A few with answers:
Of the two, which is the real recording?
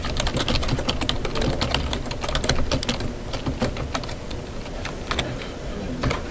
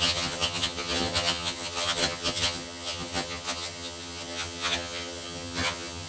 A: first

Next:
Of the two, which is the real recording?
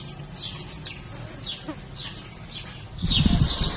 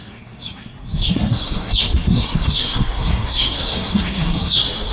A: first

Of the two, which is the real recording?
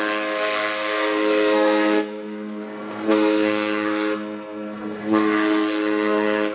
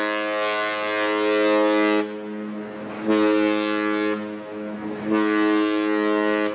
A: second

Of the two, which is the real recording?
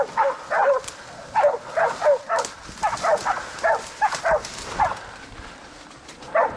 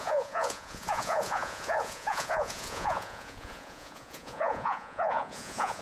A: first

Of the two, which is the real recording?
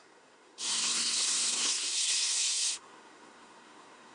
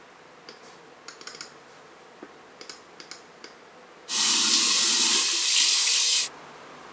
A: second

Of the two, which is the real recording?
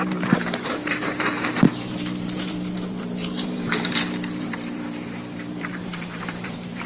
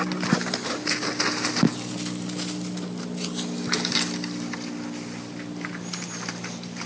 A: second